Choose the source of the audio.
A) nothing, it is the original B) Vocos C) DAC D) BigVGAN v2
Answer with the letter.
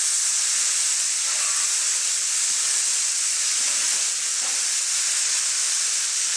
A